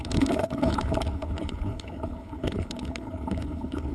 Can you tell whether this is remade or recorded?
remade